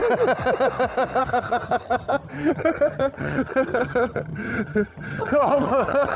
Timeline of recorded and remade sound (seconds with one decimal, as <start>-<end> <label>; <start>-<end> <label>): 0.0-1.2 recorded; 1.2-6.2 remade